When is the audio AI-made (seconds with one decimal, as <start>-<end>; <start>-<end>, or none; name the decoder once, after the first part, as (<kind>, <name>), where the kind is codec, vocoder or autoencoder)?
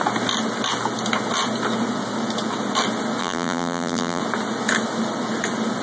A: 3.2-4.2 (vocoder, BigVGAN v2)